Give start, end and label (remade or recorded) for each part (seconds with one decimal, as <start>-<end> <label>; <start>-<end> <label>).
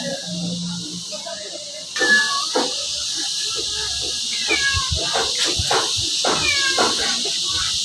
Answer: 0.0-7.8 recorded